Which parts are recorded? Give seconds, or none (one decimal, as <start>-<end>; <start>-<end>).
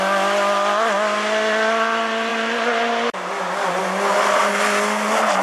0.0-5.4